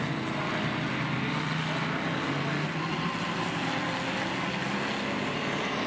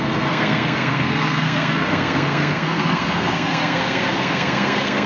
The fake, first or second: second